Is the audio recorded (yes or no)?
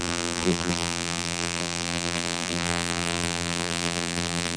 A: no